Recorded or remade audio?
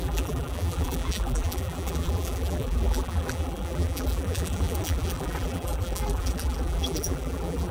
remade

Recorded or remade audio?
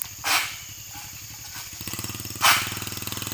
recorded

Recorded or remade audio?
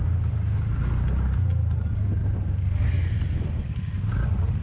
recorded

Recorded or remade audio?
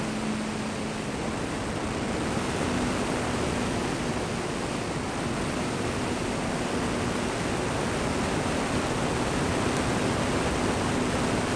recorded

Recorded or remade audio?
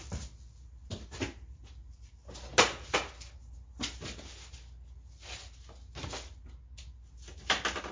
recorded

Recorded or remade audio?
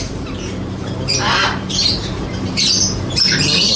remade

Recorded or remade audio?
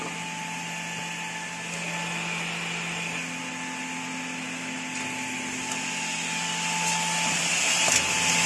recorded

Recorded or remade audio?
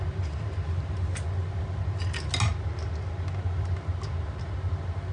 recorded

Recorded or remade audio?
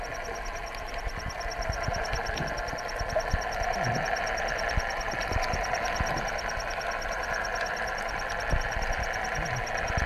recorded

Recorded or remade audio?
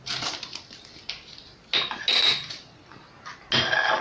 recorded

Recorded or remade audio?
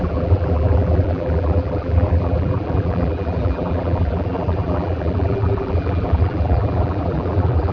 remade